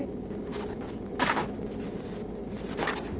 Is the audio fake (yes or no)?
no